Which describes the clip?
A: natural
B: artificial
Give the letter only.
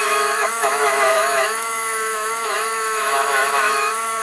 B